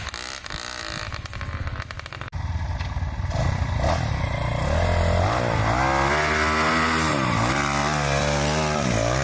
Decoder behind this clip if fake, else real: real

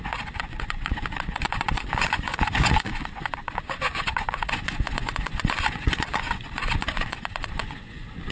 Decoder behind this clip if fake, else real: fake, vocoder, Vocos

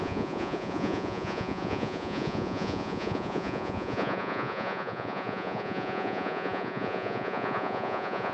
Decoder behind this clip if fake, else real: fake, vocoder, Vocos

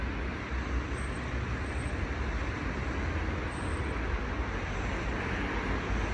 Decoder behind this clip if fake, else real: real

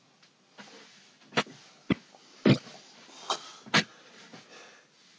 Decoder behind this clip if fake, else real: real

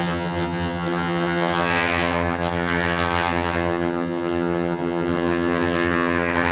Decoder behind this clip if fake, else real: fake, vocoder, HiFi-GAN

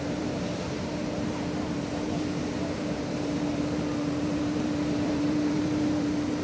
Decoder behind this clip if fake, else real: fake, vocoder, BigVGAN v2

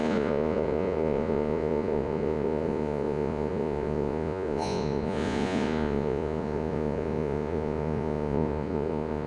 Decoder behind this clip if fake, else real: fake, vocoder, Vocos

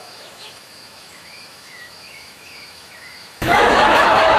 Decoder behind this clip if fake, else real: fake, autoencoder, DAC-VAE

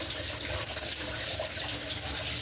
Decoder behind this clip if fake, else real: real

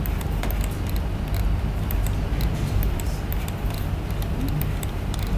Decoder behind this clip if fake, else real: real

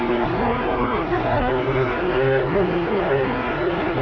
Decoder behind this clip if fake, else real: fake, codec, SNAC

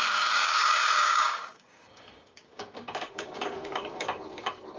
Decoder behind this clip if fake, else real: fake, codec, DAC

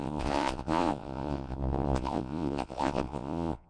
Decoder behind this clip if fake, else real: fake, vocoder, Vocos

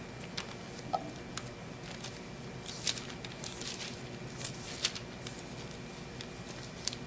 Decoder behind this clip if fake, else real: real